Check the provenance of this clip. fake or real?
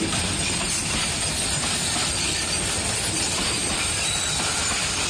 real